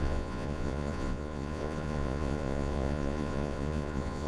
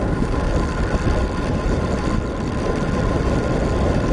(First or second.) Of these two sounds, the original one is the second